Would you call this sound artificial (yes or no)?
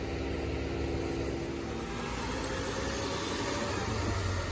no